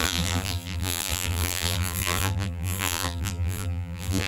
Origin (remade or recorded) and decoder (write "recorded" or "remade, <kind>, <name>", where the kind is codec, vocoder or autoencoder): remade, vocoder, BigVGAN v2